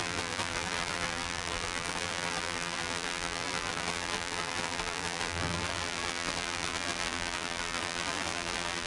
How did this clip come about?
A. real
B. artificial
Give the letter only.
B